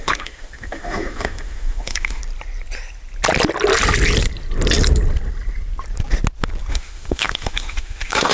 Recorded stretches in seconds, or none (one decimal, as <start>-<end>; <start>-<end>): 2.2-6.7

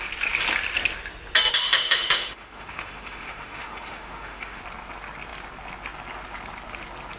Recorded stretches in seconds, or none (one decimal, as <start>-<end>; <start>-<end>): 0.0-1.5; 4.6-7.2

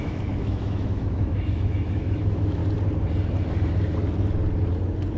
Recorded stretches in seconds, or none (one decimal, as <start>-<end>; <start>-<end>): 2.6-5.2

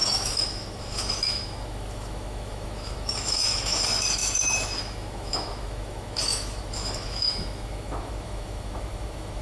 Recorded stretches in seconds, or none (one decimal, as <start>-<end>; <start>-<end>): none

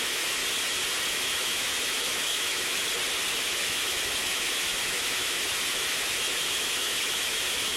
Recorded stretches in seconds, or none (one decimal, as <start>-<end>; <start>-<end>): 0.4-1.1; 2.8-3.3

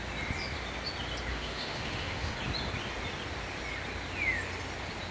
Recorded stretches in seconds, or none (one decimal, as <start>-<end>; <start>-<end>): 0.0-1.3; 2.3-5.1

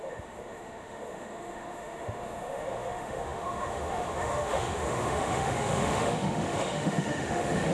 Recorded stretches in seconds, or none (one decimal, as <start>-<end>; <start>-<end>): none

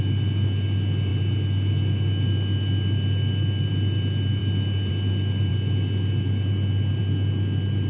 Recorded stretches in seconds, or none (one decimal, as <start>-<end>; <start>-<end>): 0.0-7.9